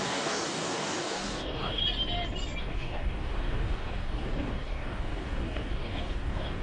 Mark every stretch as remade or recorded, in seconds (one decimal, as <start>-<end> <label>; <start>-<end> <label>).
0.0-1.8 remade; 1.8-2.6 recorded; 2.6-6.6 remade

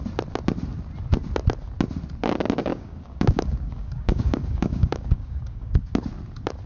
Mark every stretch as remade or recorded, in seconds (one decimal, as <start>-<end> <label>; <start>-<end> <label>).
0.0-2.7 recorded; 2.7-5.9 remade; 5.9-6.7 recorded

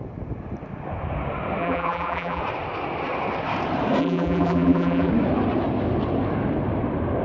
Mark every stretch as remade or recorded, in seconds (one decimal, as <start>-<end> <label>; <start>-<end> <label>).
0.0-1.6 recorded; 1.6-2.4 remade; 2.4-4.0 recorded; 4.0-5.1 remade; 5.1-7.2 recorded

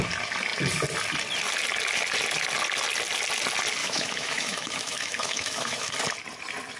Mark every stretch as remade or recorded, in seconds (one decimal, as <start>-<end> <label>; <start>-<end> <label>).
0.0-3.8 recorded; 3.8-5.9 remade; 5.9-6.8 recorded

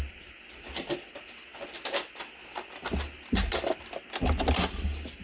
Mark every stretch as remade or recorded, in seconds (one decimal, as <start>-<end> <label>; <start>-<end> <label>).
0.0-5.2 recorded

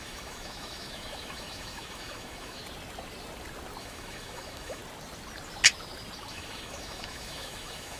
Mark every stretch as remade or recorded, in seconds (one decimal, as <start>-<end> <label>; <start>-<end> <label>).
0.0-2.6 remade; 2.6-3.8 recorded; 3.8-4.8 remade; 4.8-6.3 recorded; 6.3-8.0 remade